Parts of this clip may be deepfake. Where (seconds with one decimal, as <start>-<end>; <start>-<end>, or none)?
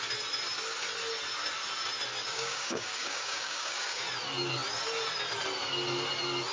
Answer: 2.3-4.0